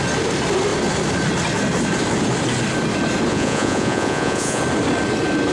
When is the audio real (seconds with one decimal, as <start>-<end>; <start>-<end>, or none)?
0.0-3.3; 4.6-5.5